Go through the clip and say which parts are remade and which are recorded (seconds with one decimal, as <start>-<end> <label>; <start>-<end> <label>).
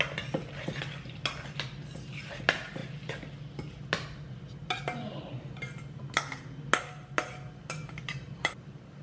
0.0-9.0 recorded